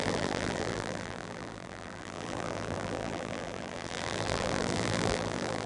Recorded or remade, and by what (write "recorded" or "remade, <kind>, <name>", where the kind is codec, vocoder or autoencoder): remade, vocoder, BigVGAN v2